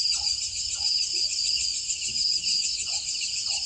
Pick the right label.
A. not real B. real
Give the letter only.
A